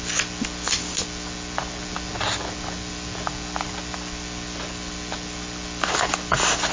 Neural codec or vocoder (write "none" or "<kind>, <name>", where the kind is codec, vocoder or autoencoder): none